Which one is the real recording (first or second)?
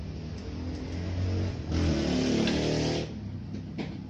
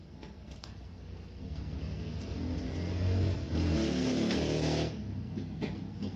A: first